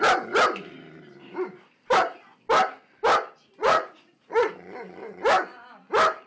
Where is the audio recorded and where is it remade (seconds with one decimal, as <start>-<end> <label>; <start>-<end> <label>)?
0.0-3.6 recorded; 3.6-4.5 remade; 4.5-6.3 recorded